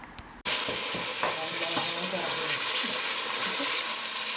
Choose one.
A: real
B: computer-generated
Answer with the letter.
A